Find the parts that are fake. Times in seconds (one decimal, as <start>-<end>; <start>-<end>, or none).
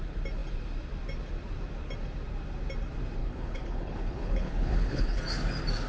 3.2-5.2